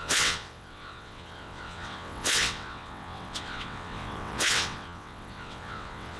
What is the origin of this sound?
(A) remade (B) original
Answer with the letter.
A